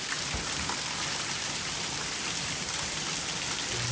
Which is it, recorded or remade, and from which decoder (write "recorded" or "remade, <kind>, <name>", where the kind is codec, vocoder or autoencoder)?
recorded